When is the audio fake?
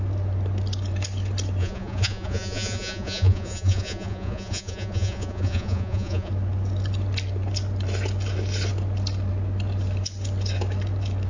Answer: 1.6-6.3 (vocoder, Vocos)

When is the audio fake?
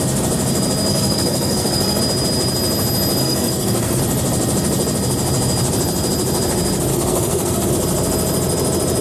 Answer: 0.9-2.0 (codec, SNAC); 3.2-4.0; 6.9-7.7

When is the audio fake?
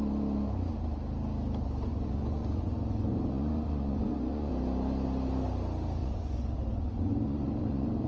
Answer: 1.9-4.5 (vocoder, Vocos); 6.0-8.1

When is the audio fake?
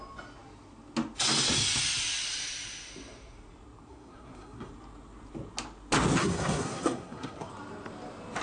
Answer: 3.9-4.7 (codec, SNAC); 6.2-7.5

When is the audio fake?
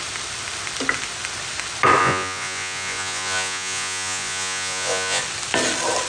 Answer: 2.0-5.2 (vocoder, Vocos)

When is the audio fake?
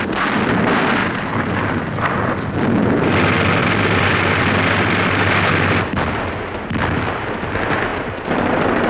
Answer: 1.0-1.8 (vocoder, BigVGAN v2); 3.6-4.4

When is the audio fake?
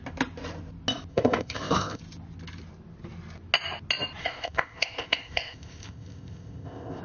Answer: 1.1-2.0 (codec, ZipCodec); 4.2-7.0